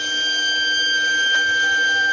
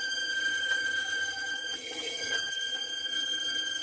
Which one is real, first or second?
first